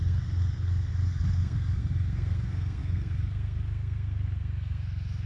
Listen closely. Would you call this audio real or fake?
fake